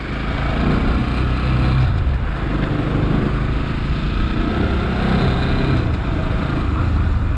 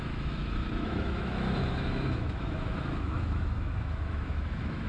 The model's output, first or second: second